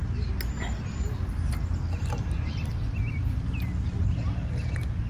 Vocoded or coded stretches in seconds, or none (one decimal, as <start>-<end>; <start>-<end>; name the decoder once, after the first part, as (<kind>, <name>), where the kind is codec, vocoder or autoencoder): none